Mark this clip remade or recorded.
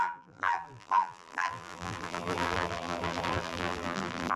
remade